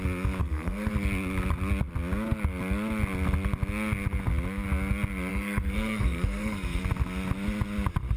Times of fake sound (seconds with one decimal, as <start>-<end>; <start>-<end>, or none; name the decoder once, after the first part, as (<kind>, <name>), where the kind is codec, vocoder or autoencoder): 0.4-0.9 (codec, SNAC); 5.3-6.8